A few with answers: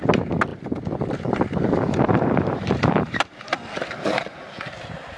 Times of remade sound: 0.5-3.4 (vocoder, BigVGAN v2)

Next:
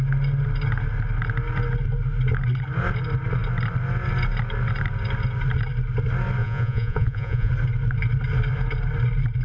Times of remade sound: 6.4-7.5 (vocoder, Vocos)

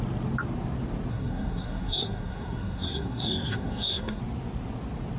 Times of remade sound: 1.1-4.2 (codec, SNAC)